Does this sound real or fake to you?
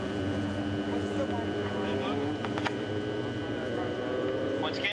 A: real